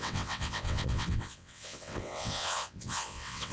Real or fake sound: fake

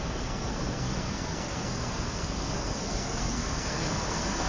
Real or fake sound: fake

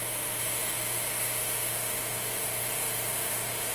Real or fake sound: fake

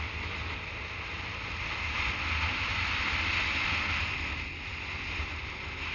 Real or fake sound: real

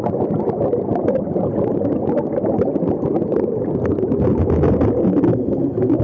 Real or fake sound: real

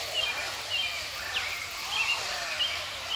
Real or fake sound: fake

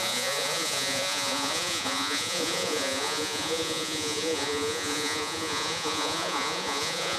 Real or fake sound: fake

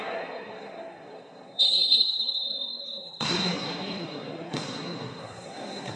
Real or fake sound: fake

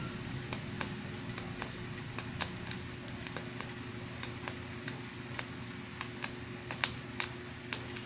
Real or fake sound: real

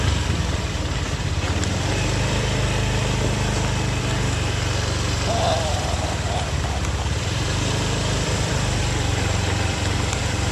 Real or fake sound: fake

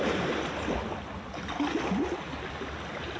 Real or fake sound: real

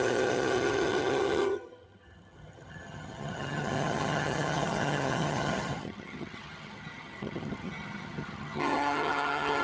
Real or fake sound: fake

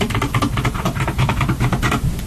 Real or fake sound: fake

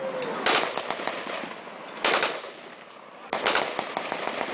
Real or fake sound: real